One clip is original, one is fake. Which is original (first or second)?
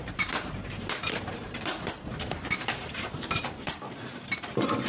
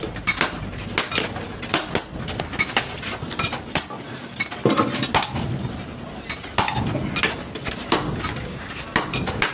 second